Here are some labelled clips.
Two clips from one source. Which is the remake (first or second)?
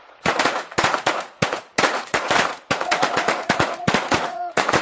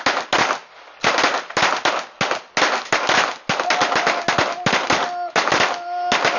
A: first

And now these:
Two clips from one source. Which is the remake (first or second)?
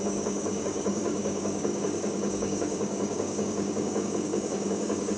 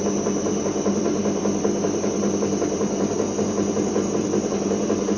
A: first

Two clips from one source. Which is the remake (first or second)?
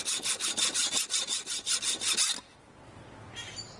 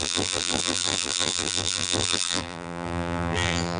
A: second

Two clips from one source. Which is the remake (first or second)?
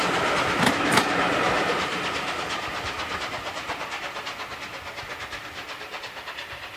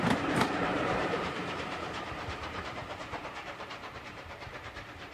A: second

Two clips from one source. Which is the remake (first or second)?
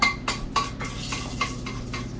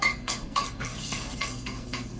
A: second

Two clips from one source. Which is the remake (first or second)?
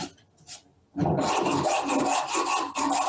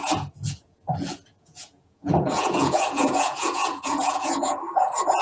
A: second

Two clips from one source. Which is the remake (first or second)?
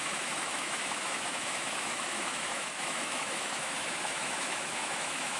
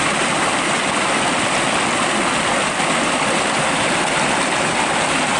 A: first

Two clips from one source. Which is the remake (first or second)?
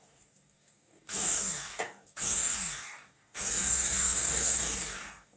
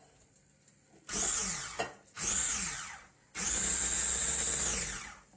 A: first